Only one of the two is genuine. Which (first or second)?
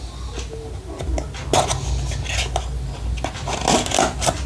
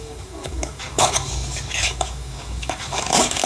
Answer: first